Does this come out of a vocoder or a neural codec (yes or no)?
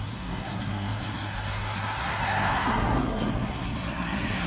yes